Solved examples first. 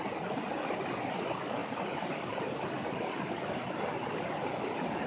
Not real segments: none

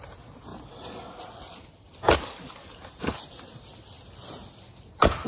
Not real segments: none

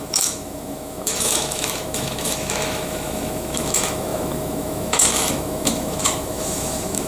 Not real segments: 0.0-7.1 (autoencoder, DAC-VAE)

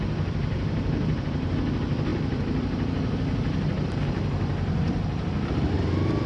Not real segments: 0.4-1.5 (vocoder, BigVGAN v2)